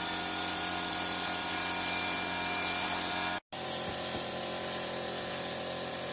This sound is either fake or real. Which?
real